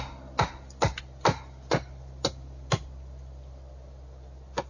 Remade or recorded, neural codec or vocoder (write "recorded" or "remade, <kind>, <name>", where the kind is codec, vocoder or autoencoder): recorded